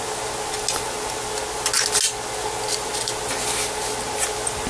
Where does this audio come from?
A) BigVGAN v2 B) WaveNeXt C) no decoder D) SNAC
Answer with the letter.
C